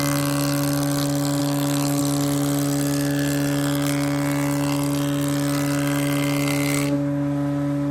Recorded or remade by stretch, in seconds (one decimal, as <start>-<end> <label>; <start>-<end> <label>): 0.0-1.4 recorded; 1.4-2.0 remade; 2.0-7.9 recorded